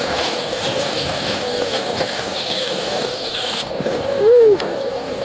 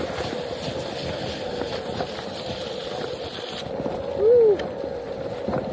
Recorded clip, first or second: second